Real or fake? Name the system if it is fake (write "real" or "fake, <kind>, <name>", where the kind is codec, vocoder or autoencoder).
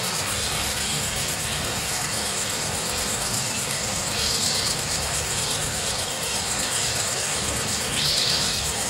fake, codec, DAC